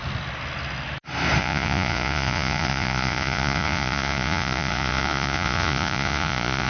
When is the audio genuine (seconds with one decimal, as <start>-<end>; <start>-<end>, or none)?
0.0-1.4